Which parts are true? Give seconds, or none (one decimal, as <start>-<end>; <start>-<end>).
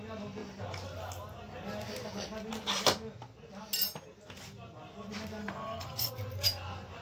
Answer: 0.0-5.4; 6.1-7.0